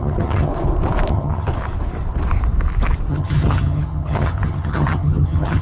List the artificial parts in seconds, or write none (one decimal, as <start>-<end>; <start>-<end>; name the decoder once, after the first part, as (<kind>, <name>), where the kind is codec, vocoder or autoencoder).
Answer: 0.0-0.5 (vocoder, HiFi-GAN); 1.1-1.5; 3.1-5.6